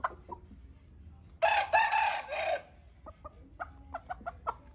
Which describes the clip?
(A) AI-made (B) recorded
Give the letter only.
B